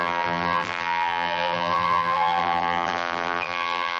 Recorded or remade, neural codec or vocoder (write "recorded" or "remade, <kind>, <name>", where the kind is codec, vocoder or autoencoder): remade, vocoder, BigVGAN v2